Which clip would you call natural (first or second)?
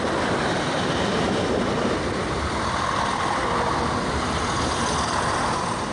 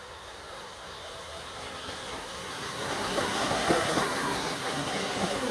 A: first